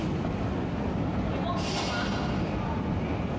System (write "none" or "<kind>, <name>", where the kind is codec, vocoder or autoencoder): none